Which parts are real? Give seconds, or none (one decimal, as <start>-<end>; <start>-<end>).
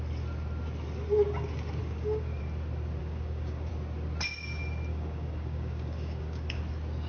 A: 0.0-1.8; 2.4-3.0; 3.7-4.9; 6.6-7.1